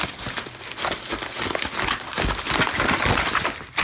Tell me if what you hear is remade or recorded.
recorded